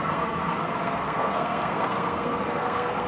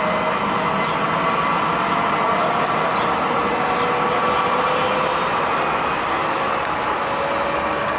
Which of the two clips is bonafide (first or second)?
second